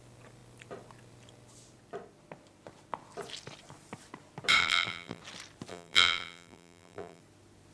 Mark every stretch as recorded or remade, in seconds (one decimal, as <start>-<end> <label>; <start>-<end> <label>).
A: 0.0-4.6 recorded; 4.6-5.2 remade; 5.2-5.7 recorded; 5.7-7.2 remade; 7.2-7.7 recorded